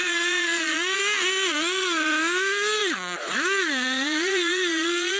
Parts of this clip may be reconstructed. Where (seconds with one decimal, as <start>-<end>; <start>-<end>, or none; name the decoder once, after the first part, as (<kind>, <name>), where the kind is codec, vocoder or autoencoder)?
0.0-1.0 (vocoder, Vocos); 1.5-2.1; 2.8-5.2